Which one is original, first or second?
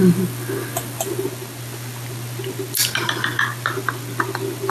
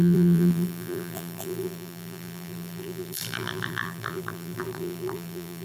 first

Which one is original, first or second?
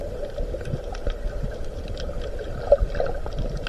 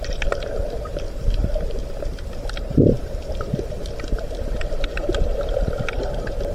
first